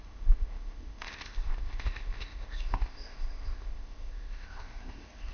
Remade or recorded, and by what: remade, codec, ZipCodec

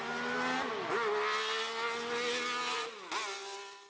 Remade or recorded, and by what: recorded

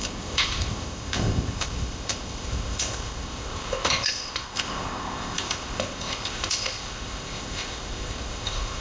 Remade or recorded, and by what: remade, codec, ZipCodec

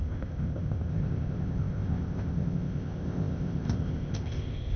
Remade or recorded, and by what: remade, codec, ZipCodec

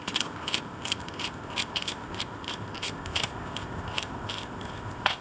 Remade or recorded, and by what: remade, codec, ZipCodec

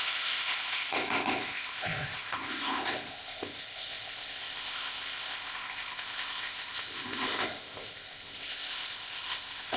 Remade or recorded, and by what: remade, codec, ZipCodec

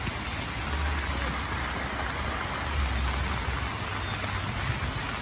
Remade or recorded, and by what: recorded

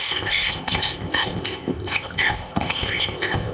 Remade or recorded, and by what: remade, codec, ZipCodec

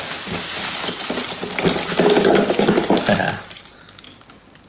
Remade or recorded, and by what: recorded